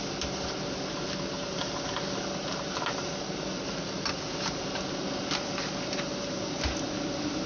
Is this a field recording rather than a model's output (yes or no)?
yes